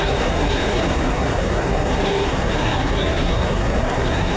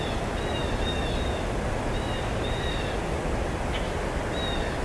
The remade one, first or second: first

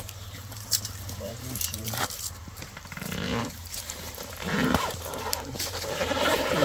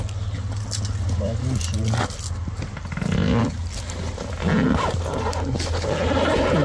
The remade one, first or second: first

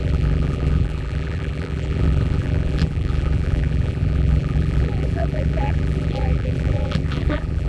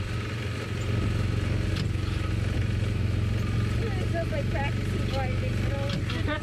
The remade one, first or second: first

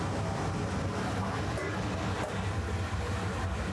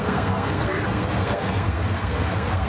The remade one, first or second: second